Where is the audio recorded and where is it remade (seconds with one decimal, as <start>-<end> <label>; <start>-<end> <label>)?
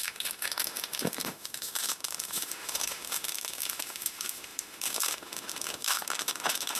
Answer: 0.0-6.8 remade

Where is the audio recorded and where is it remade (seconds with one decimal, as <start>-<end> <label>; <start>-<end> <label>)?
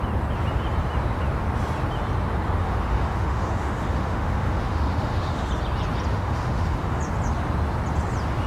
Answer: 0.0-2.6 recorded; 2.6-5.5 remade; 5.5-6.1 recorded; 6.1-7.0 remade; 7.0-8.5 recorded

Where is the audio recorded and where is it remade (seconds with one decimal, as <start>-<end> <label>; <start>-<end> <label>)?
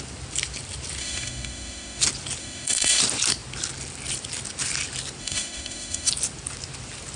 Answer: 0.0-1.0 recorded; 1.0-2.0 remade; 2.0-2.4 recorded; 2.4-3.0 remade; 3.0-5.2 recorded; 5.2-6.1 remade; 6.1-7.2 recorded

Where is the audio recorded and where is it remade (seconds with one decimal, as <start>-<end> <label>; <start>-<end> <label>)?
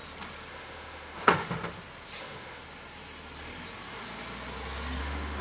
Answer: 0.0-0.5 recorded; 0.5-1.6 remade; 1.6-2.2 recorded; 2.2-2.6 remade; 2.6-5.0 recorded; 5.0-5.4 remade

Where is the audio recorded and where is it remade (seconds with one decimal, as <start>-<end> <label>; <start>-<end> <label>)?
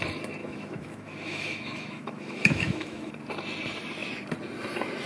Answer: 0.0-0.4 recorded; 0.4-3.1 remade; 3.1-5.1 recorded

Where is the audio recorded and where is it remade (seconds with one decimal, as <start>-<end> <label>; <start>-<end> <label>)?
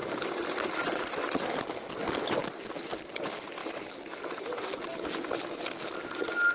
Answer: 0.0-6.5 recorded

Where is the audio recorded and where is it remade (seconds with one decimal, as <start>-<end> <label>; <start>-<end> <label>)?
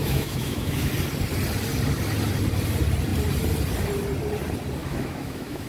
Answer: 0.0-0.9 remade; 0.9-4.8 recorded; 4.8-5.7 remade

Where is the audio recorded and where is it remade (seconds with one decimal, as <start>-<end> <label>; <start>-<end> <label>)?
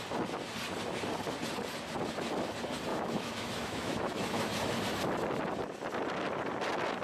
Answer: 0.0-2.9 recorded; 2.9-4.8 remade; 4.8-7.0 recorded